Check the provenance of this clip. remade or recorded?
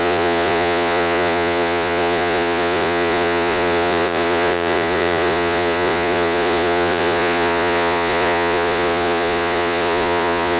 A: remade